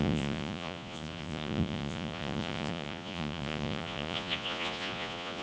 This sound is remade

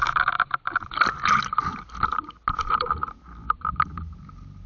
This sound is recorded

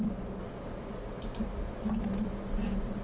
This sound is recorded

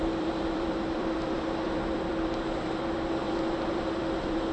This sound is remade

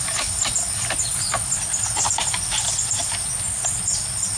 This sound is recorded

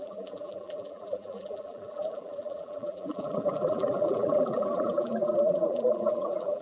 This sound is remade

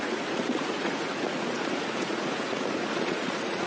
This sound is remade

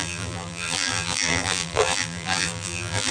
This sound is remade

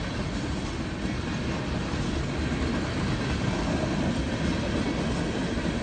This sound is recorded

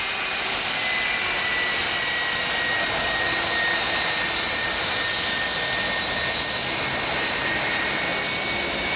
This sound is recorded